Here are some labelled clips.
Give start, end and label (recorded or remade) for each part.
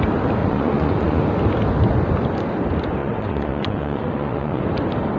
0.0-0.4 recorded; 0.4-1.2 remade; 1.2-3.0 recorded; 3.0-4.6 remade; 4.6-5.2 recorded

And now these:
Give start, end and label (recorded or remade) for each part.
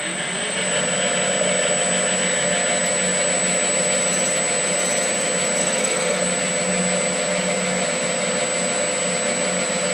0.0-5.6 recorded; 5.6-6.2 remade; 6.2-9.9 recorded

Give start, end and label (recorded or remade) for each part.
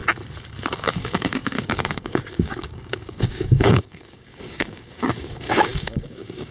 0.0-0.7 recorded; 0.7-6.5 remade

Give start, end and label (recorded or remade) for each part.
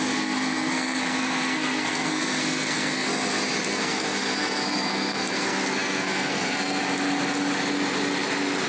0.0-3.1 remade; 3.1-3.7 recorded; 3.7-6.8 remade; 6.8-8.7 recorded